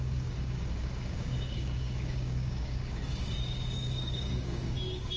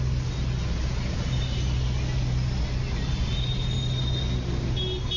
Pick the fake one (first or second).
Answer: first